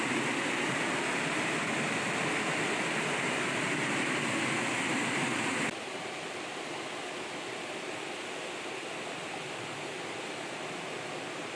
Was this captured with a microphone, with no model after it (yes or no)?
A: yes